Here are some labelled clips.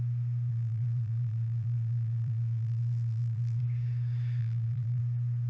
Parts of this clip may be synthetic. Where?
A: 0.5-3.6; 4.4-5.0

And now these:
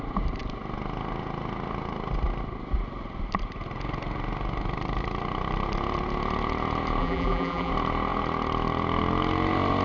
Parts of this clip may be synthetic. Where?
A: 7.0-7.7

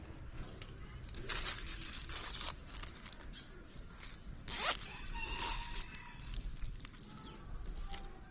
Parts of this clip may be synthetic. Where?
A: none

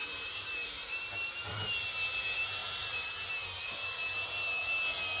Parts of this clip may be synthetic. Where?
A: 0.0-1.6

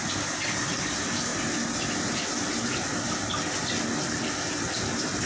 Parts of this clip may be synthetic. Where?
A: none

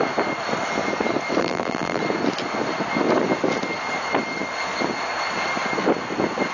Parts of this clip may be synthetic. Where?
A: 1.4-2.0